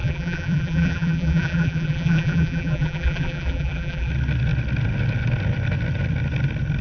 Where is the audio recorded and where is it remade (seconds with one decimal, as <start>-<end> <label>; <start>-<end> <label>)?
0.0-4.1 remade; 4.1-6.8 recorded